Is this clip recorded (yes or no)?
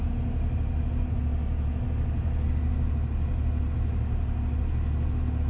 yes